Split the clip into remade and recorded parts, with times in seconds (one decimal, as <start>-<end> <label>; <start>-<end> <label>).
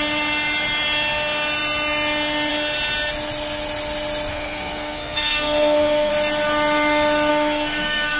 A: 0.0-4.3 recorded; 4.3-6.1 remade; 6.1-7.3 recorded; 7.3-8.2 remade